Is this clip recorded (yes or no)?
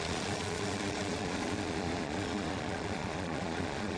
no